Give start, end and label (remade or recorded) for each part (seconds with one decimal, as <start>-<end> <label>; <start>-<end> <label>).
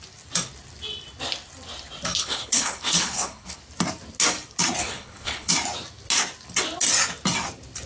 0.0-2.2 recorded; 2.2-3.6 remade; 3.6-4.8 recorded; 4.8-5.5 remade; 5.5-7.9 recorded